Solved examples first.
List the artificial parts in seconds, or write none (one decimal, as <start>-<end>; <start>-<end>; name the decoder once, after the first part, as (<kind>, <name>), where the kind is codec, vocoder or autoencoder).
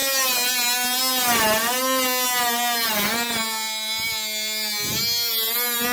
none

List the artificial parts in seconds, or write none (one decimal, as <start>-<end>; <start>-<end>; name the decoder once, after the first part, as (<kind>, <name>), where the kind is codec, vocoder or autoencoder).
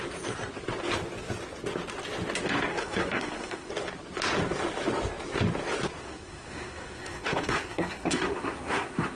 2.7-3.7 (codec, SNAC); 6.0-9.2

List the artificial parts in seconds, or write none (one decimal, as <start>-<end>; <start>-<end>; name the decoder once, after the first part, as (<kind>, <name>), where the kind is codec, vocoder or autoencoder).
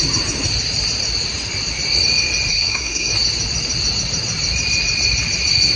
2.5-3.1 (codec, SNAC)